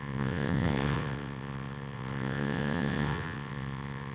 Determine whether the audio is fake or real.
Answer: fake